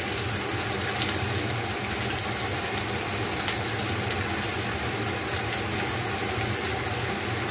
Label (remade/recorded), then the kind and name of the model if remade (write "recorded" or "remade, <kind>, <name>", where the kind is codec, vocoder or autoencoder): recorded